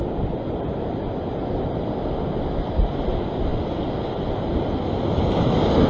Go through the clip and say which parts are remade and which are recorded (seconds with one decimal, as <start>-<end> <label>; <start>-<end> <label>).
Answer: 0.0-5.9 recorded